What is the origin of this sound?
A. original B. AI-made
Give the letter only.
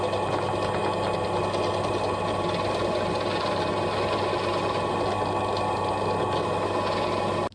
A